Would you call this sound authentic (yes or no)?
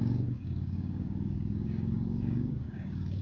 no